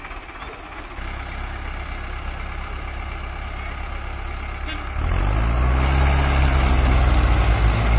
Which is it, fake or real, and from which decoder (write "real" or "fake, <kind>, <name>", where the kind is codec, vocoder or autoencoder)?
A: real